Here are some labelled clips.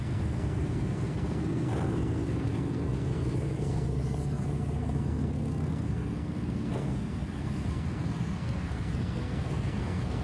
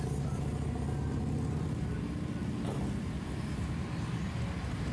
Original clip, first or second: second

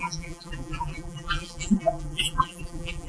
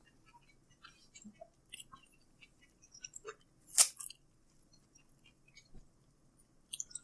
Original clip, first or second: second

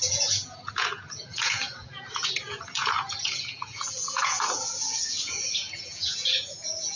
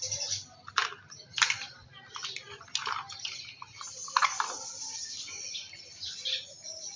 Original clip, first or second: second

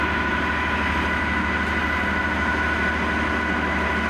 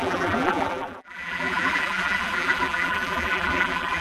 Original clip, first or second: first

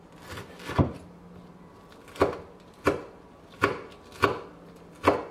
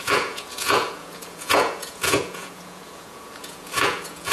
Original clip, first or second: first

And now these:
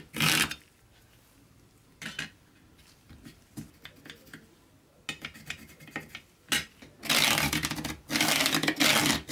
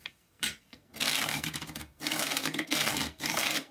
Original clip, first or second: first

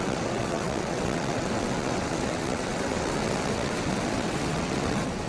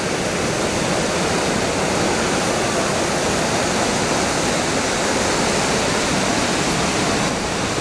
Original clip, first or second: second